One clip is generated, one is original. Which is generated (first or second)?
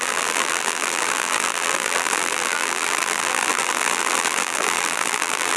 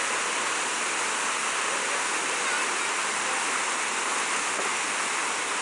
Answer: first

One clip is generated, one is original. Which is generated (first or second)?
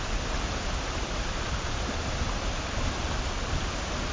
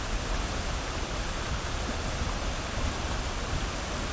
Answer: first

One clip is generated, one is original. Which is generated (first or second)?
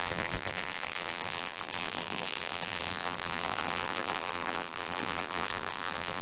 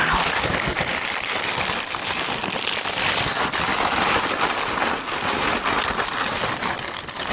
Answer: first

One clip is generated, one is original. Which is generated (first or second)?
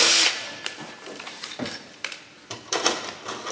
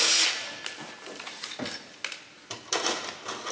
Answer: first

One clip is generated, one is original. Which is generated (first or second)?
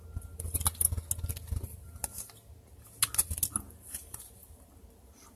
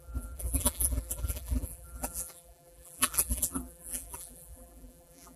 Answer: second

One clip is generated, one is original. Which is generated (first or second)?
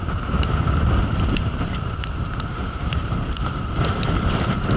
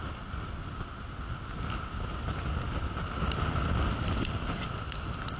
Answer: first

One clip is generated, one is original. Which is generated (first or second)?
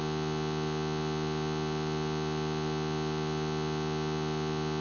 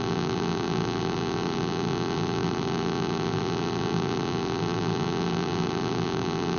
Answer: second